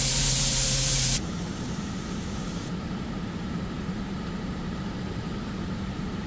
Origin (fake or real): fake